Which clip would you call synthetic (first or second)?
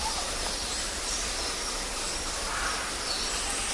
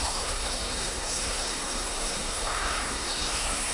second